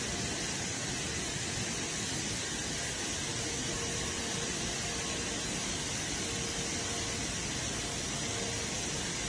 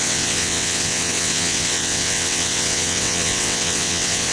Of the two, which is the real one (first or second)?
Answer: first